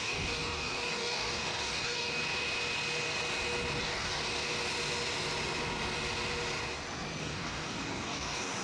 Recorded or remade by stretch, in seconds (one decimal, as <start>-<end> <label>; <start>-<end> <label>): 0.0-2.2 remade; 2.2-3.8 recorded; 3.8-4.2 remade; 4.2-7.2 recorded; 7.2-8.6 remade